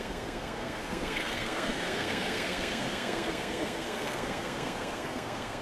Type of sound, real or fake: fake